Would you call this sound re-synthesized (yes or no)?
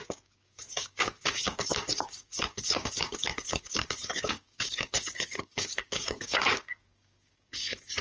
yes